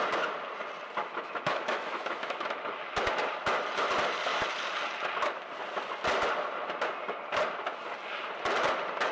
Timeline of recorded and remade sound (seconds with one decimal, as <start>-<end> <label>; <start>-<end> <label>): 0.0-1.0 recorded; 1.0-2.6 remade; 2.6-9.1 recorded